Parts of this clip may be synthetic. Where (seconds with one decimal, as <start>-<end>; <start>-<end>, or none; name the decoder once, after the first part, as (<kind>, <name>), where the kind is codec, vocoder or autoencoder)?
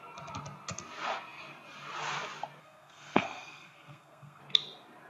2.6-4.4 (codec, SNAC)